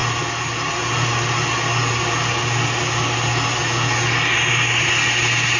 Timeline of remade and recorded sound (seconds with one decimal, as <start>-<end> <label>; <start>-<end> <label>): 0.0-5.6 recorded